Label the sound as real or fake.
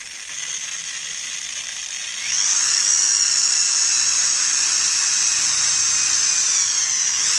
real